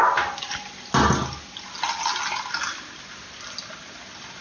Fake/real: real